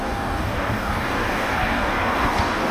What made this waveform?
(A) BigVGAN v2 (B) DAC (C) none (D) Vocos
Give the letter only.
B